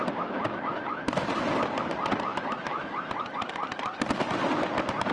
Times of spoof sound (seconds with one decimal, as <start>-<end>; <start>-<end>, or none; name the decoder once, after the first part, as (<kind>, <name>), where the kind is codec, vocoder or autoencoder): 0.0-1.1 (autoencoder, DAC-VAE); 2.3-3.1